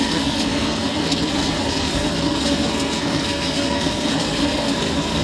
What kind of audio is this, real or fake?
fake